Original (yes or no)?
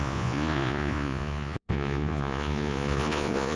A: no